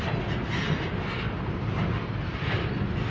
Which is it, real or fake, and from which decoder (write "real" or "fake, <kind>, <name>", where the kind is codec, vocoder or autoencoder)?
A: real